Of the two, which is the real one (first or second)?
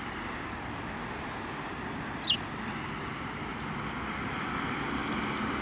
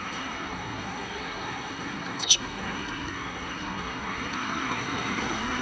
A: first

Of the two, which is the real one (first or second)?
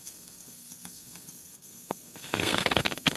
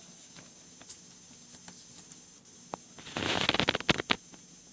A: second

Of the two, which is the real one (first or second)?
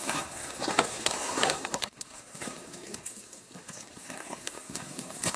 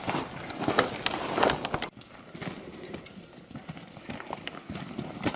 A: second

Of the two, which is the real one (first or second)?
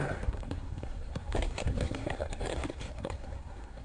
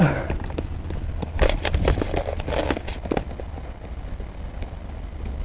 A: second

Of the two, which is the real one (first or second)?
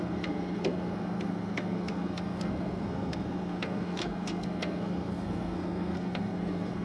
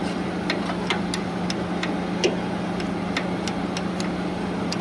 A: second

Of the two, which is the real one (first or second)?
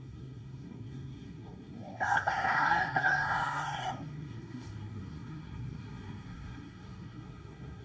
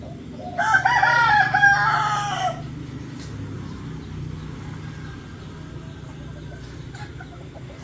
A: second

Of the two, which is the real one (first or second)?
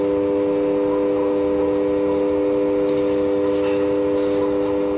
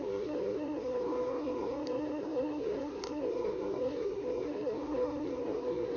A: first